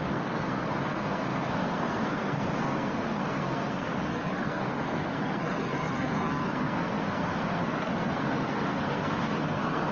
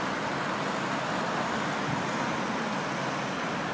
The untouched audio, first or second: second